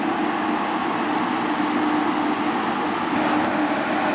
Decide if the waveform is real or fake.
real